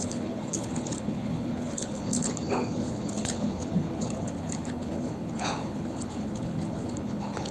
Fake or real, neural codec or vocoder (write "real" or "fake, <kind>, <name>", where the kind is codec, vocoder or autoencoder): fake, codec, HILCodec